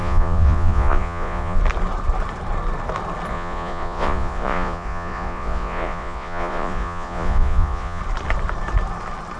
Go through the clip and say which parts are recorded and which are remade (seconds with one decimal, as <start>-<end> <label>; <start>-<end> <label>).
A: 0.0-1.6 remade; 1.6-3.3 recorded; 3.3-8.0 remade; 8.0-9.4 recorded